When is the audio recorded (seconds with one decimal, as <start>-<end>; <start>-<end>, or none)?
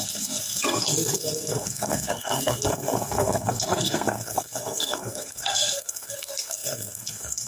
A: none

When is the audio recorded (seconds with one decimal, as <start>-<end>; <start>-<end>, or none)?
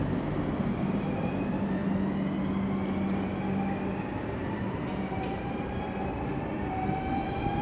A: 1.8-4.4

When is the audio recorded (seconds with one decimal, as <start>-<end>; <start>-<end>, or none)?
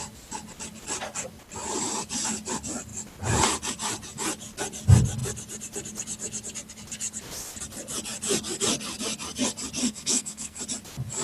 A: 0.0-9.8; 10.6-11.2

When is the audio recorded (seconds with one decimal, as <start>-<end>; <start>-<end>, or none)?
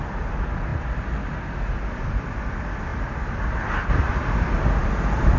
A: 0.0-5.4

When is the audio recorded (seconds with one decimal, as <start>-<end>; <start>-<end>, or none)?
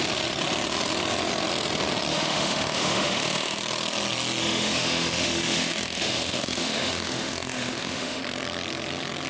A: 0.0-2.1; 3.6-4.4; 8.2-9.3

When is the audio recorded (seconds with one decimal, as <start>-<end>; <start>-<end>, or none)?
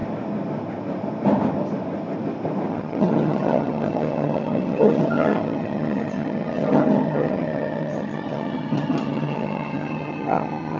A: 0.0-2.7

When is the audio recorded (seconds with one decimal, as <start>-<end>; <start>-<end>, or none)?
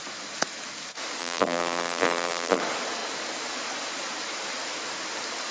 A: 0.0-1.2; 2.6-5.5